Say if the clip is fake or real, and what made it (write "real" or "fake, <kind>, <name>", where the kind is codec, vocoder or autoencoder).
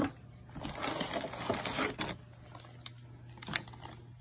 real